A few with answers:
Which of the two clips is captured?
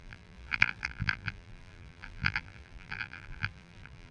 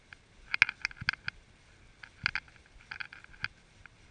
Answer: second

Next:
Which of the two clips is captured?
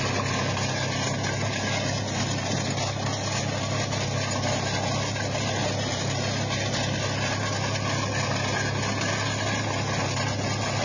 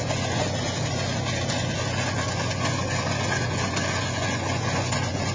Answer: first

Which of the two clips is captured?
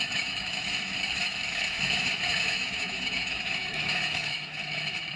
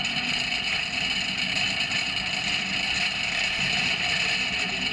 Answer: second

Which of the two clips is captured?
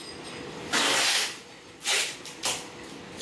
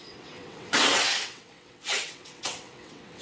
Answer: first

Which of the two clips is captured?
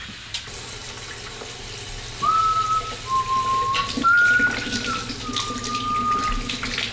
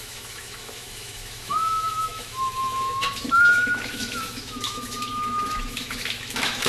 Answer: first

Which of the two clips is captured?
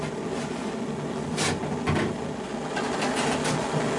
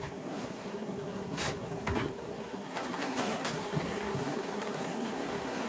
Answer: first